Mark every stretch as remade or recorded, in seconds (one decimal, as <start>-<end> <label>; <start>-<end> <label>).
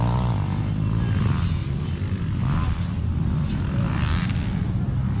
0.0-1.6 recorded; 1.6-4.7 remade; 4.7-5.2 recorded